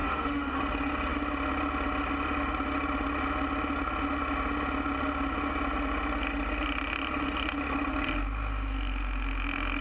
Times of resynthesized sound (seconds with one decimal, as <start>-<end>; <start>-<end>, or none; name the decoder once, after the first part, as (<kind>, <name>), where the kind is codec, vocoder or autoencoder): 0.0-0.6 (autoencoder, DAC-VAE)